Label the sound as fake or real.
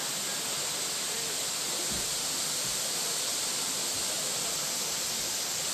real